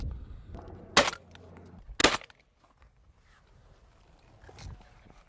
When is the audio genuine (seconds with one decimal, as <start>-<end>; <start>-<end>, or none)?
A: 0.0-5.3